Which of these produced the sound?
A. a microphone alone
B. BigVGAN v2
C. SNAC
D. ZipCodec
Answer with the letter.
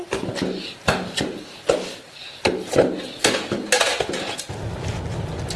A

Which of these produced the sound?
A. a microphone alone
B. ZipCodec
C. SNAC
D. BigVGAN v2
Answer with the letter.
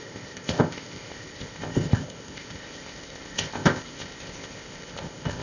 B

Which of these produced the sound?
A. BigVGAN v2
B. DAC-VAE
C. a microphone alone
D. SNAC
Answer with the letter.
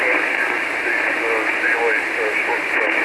C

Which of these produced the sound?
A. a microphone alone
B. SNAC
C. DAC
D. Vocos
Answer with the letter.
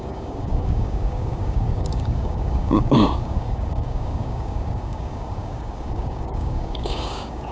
C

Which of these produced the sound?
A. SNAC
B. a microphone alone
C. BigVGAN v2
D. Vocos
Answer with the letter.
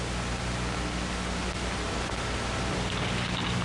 B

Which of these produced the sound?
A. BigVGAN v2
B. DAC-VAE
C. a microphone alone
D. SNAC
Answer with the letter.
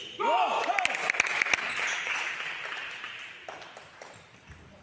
C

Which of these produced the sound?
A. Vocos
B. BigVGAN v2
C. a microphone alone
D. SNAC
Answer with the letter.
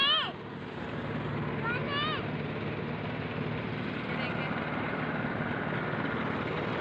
C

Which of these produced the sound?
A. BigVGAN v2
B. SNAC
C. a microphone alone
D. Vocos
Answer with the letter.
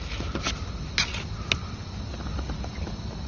C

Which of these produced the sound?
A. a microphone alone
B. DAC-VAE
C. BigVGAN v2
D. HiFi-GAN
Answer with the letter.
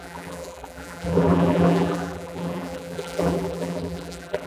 C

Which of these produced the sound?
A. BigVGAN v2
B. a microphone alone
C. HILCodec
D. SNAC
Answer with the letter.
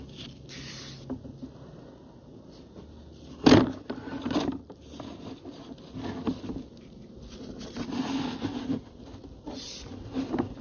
B